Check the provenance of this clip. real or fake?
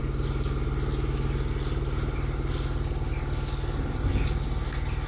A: real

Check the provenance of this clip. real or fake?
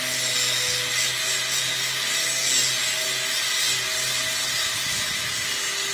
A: real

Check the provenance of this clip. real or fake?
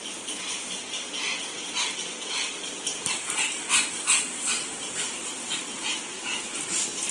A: real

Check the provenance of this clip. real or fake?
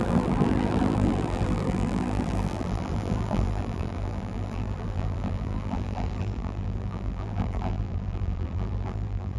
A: fake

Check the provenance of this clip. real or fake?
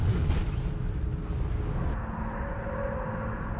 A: real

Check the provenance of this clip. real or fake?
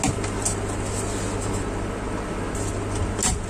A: real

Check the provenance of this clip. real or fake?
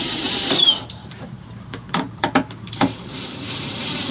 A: fake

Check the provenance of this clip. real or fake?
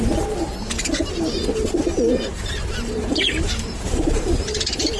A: fake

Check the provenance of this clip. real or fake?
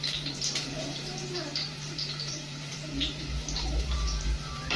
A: fake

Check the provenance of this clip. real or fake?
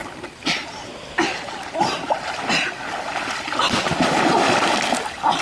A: real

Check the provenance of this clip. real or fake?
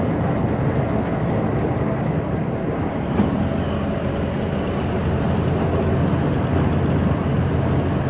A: real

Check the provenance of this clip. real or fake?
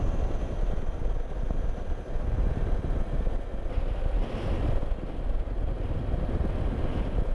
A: real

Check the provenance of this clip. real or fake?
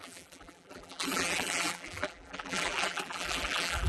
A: fake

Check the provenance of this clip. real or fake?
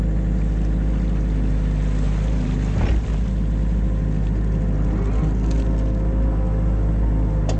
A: real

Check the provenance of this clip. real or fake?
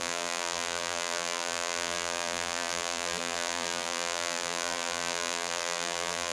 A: fake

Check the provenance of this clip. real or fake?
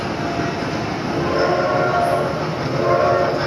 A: real